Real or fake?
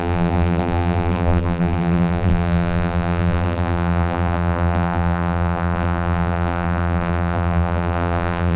fake